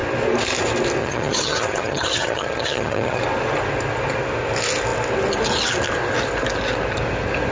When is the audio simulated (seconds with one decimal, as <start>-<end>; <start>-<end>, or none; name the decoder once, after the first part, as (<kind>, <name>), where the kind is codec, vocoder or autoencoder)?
1.0-3.2 (vocoder, HiFi-GAN)